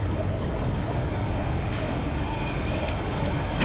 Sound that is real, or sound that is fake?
fake